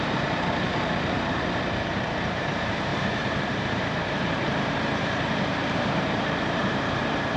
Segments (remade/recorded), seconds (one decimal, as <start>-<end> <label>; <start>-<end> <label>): 0.0-7.4 remade